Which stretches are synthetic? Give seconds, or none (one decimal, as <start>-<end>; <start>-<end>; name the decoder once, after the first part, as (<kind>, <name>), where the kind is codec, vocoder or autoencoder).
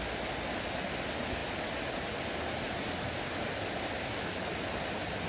none